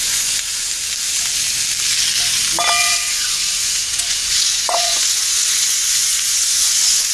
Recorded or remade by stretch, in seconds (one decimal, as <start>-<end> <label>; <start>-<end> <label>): 0.0-0.7 remade; 0.7-2.8 recorded; 2.8-7.1 remade